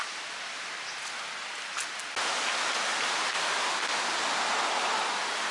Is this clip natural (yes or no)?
yes